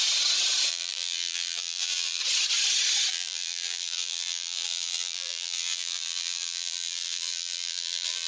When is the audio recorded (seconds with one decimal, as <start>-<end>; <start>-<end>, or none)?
0.0-0.7; 2.2-3.1